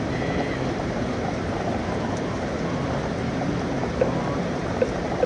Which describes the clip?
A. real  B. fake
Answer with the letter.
B